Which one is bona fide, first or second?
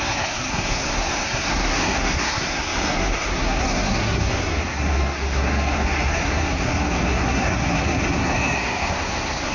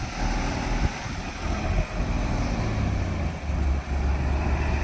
second